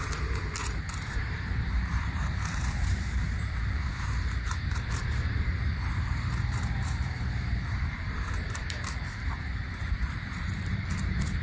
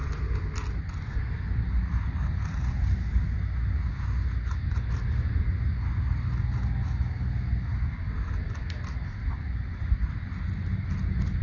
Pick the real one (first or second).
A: second